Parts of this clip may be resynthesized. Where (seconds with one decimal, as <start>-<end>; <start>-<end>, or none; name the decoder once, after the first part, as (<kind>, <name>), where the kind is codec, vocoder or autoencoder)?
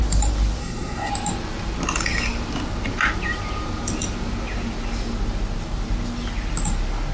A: 0.6-1.1 (codec, SNAC)